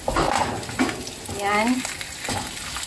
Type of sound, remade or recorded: recorded